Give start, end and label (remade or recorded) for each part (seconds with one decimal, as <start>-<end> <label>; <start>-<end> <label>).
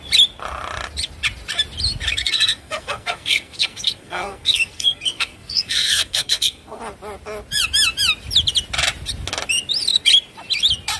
0.0-2.1 recorded; 2.1-6.8 remade; 6.8-11.0 recorded